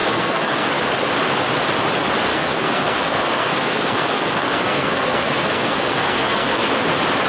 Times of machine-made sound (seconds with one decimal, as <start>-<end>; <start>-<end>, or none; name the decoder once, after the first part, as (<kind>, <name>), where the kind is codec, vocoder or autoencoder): 0.0-0.8 (codec, SNAC); 2.3-6.7